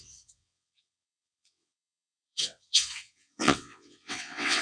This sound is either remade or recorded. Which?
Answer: remade